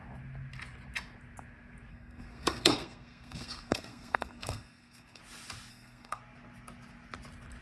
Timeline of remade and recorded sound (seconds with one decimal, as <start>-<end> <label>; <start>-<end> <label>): 0.0-1.9 recorded; 1.9-5.2 remade; 5.2-5.7 recorded; 5.7-6.2 remade; 6.2-7.6 recorded